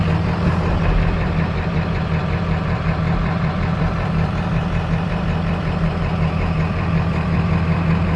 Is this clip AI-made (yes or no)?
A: yes